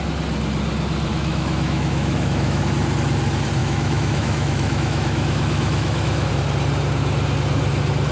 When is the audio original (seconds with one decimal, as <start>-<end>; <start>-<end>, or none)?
0.0-1.1; 2.6-3.6; 6.3-8.1

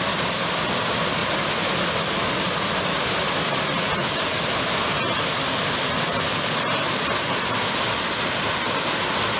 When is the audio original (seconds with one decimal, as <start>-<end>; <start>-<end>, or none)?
0.0-9.4

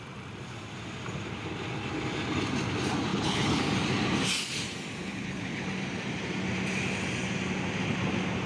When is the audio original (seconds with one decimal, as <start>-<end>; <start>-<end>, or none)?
0.0-3.1; 3.6-5.0; 5.6-8.5